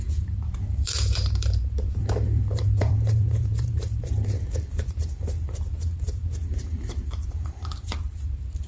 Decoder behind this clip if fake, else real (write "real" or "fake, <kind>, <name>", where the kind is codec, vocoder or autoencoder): fake, vocoder, BigVGAN v2